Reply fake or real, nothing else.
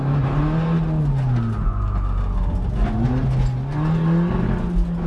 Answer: real